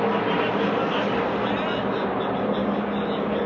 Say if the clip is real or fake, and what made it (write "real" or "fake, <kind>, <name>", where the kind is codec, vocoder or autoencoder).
real